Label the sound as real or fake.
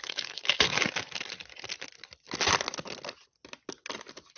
real